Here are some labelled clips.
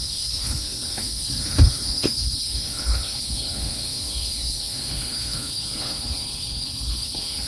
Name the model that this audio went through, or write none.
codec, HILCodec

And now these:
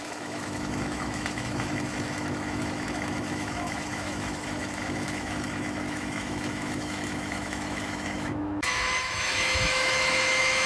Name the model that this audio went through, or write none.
autoencoder, DAC-VAE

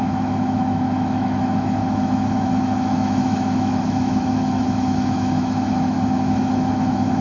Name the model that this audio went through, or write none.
autoencoder, DAC-VAE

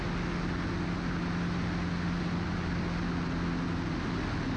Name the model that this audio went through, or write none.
none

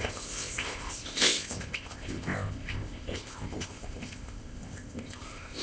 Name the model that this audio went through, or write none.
codec, ZipCodec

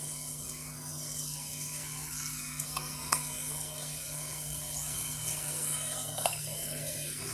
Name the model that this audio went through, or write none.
codec, SNAC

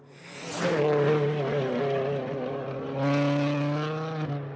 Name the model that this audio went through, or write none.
none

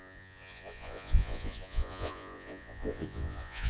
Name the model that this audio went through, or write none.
vocoder, Vocos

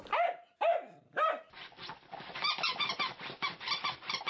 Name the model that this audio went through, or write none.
none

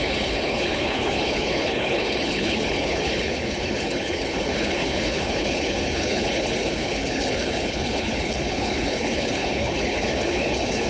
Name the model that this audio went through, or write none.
codec, HILCodec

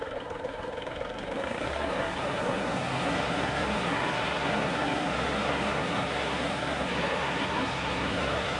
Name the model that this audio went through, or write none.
codec, SNAC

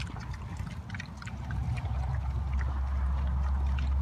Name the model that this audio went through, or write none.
none